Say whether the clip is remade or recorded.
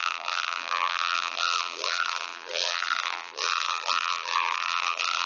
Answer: remade